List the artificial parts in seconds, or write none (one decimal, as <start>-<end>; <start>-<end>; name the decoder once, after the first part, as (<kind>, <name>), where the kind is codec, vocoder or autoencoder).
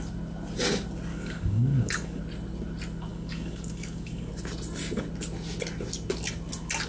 1.1-2.2 (codec, DAC); 3.1-4.3